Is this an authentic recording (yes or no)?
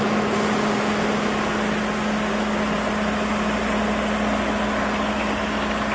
yes